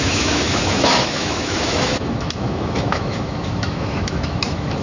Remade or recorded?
remade